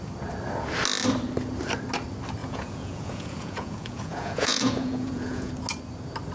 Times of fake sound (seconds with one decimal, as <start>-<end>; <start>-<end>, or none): 2.4-5.5